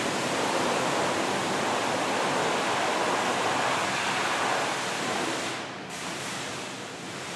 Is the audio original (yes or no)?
yes